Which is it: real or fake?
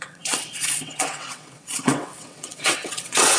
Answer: fake